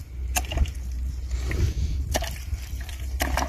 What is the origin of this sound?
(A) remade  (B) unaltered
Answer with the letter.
A